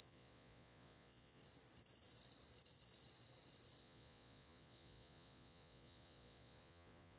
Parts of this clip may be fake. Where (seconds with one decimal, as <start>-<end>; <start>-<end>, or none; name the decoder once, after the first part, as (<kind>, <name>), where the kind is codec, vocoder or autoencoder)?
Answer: 0.0-1.4 (vocoder, Vocos); 3.8-7.2